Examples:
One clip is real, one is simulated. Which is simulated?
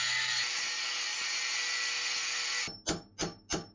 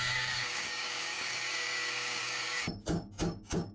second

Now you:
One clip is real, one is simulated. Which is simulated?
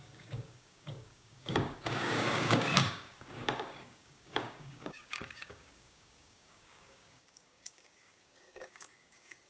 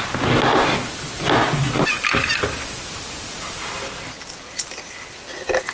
first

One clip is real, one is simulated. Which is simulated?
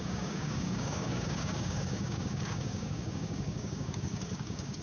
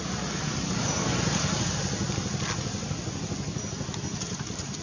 first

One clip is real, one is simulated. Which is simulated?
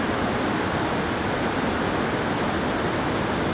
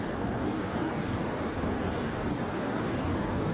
second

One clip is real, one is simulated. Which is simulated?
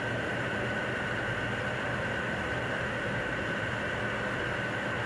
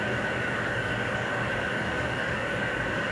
second